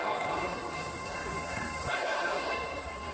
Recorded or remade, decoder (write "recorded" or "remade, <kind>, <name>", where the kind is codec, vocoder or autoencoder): remade, codec, SNAC